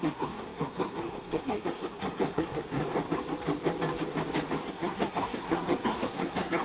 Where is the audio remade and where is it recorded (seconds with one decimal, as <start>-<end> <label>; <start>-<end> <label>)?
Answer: 0.0-2.8 remade; 2.8-4.7 recorded; 4.7-6.6 remade